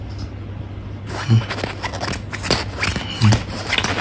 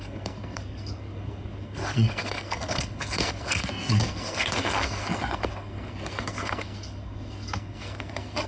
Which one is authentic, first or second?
first